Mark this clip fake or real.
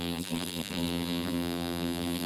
fake